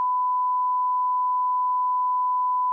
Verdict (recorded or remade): recorded